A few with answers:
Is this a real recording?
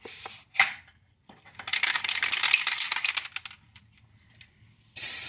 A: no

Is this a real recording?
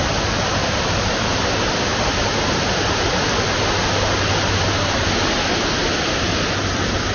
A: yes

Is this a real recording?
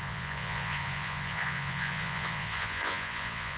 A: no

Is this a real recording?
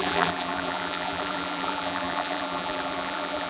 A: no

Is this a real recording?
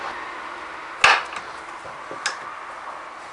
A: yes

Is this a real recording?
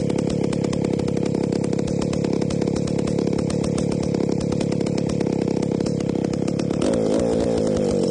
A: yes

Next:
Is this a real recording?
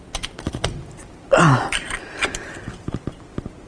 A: yes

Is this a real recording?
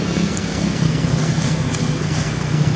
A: no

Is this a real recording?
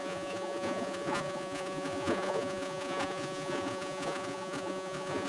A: no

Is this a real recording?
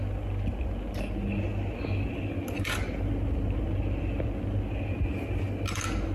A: yes